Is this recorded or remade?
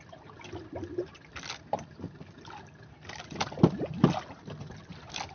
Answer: recorded